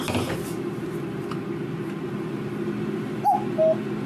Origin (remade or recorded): recorded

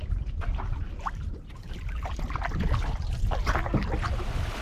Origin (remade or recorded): recorded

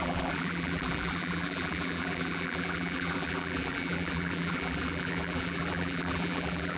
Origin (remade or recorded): remade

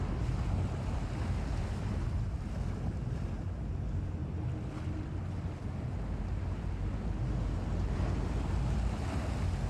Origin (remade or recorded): recorded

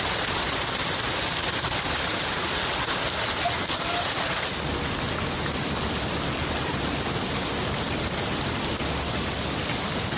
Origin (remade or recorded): recorded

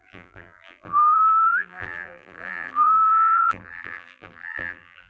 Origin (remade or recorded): remade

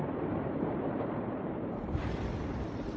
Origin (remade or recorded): remade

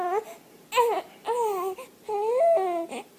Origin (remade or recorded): recorded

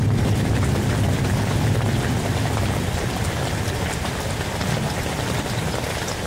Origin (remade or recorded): recorded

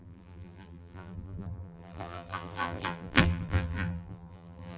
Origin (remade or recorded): remade